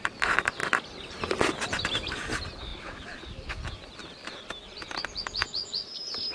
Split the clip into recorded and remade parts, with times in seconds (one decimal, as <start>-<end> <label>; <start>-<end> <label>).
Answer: 0.0-6.3 recorded